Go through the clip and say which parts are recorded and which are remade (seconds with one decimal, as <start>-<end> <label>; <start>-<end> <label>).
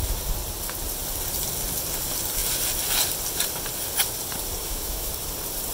0.0-4.6 recorded; 4.6-5.1 remade; 5.1-5.7 recorded